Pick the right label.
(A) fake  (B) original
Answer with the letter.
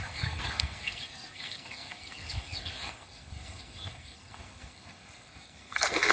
A